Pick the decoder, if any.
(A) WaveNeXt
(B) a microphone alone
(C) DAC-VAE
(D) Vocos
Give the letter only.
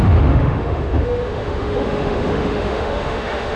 C